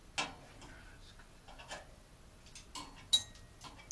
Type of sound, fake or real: real